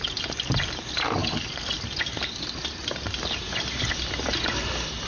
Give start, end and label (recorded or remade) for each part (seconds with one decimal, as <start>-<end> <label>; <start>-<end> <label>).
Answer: 0.0-5.1 recorded